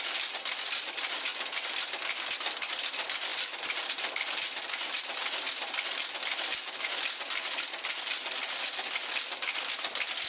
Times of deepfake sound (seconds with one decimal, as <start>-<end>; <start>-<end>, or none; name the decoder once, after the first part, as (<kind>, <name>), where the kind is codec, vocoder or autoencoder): none